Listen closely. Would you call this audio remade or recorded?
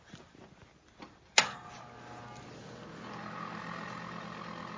recorded